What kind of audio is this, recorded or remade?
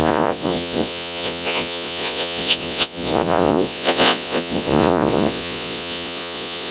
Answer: remade